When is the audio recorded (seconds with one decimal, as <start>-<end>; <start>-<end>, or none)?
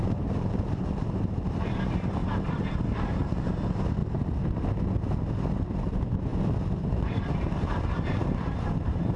4.0-5.6; 6.3-6.8